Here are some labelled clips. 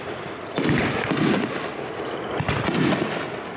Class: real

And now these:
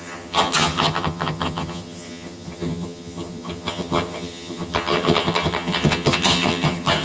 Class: fake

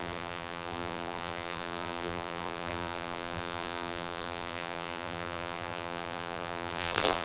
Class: fake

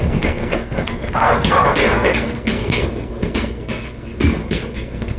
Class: fake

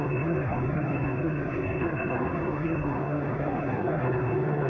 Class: fake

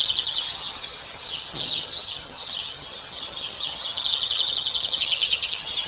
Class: fake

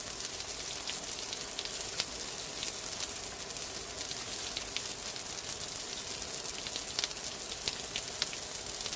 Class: real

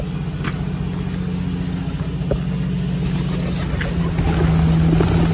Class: real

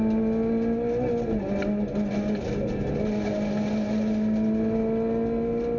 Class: real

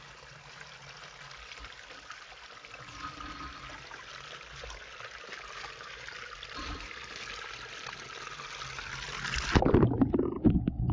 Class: real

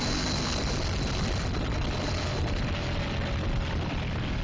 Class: real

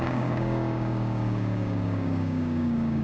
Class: fake